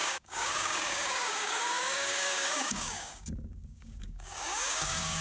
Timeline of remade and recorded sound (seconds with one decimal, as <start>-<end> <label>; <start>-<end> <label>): 0.0-5.2 remade